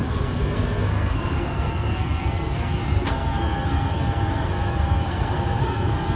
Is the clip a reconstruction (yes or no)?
yes